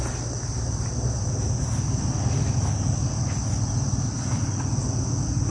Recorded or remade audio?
recorded